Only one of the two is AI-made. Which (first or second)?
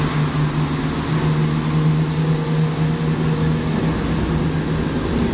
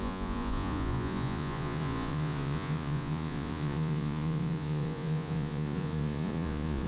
second